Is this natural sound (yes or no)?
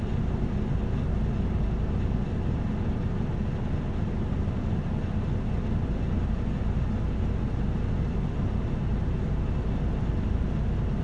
yes